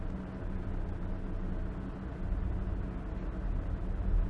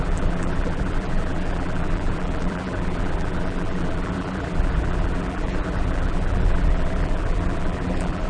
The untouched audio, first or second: first